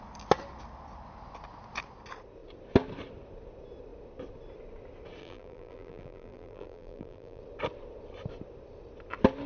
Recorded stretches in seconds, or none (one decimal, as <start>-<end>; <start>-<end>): 0.0-5.2; 7.4-9.5